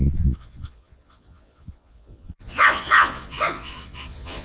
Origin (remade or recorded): remade